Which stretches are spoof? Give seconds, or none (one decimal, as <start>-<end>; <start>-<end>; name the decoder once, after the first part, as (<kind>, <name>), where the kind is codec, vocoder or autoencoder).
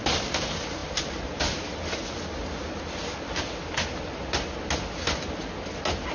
none